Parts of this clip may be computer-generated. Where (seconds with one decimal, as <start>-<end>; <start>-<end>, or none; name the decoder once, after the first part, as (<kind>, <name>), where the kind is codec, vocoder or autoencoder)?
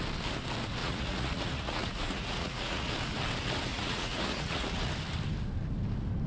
0.8-2.9 (vocoder, Vocos); 3.7-4.9